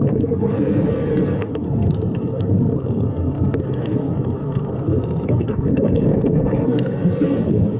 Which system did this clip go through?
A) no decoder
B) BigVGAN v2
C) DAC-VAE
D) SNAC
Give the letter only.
D